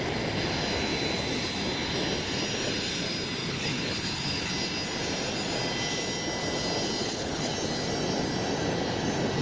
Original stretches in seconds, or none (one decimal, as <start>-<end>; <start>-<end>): 0.0-3.4; 4.5-7.0; 7.5-9.4